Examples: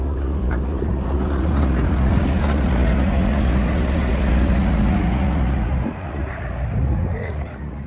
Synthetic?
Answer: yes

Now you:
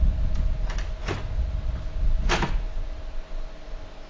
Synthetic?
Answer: no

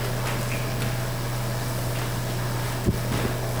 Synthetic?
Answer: no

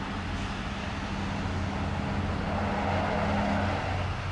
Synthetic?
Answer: no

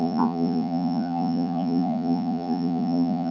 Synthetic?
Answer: yes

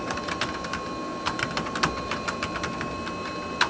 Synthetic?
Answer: no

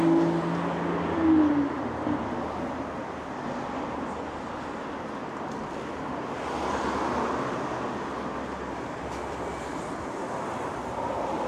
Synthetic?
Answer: no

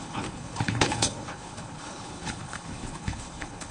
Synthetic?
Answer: yes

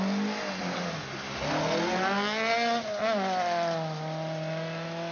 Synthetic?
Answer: no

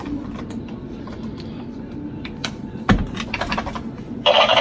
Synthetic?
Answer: yes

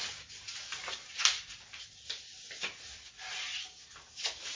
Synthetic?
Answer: no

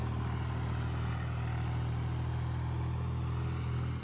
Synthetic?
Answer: no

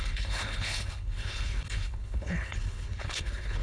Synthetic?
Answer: yes